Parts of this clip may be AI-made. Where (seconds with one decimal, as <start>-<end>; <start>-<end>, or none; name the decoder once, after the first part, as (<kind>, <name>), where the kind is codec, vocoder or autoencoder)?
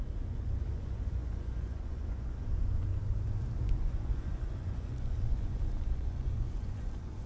0.0-2.9 (vocoder, Vocos); 3.6-7.3